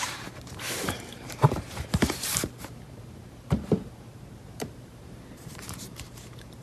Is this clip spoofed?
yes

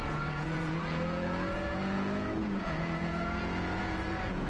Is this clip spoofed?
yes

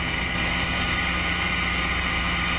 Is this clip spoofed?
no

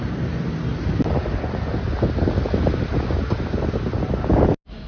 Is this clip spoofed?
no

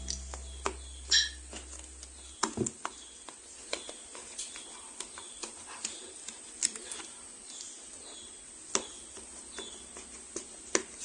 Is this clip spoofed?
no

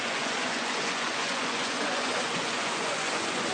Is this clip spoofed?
yes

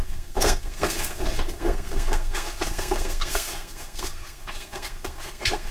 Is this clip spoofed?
yes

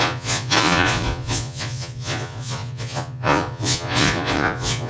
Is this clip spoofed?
yes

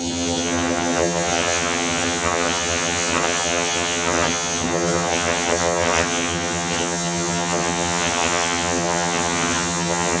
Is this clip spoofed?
yes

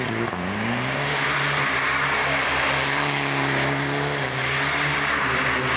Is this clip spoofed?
no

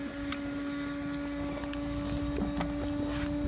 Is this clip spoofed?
no